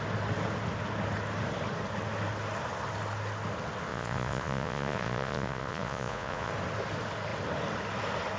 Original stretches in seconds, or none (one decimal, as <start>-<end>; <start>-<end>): 0.0-3.9; 6.5-8.4